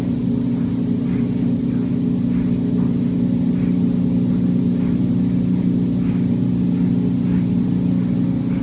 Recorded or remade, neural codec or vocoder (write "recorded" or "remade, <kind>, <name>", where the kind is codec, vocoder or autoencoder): recorded